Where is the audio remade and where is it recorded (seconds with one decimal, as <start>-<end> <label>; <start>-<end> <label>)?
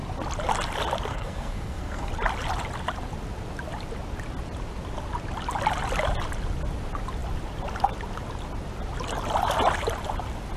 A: 0.0-1.1 recorded; 1.1-2.1 remade; 2.1-10.6 recorded